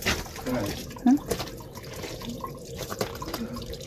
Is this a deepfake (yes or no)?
yes